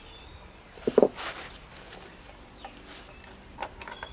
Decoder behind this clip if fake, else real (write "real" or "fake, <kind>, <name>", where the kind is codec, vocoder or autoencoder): real